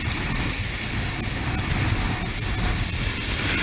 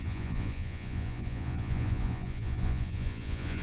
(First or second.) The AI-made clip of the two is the second